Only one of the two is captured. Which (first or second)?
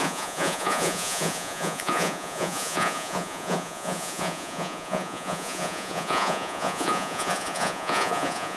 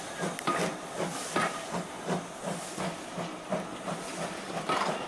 second